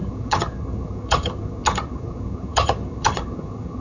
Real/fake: fake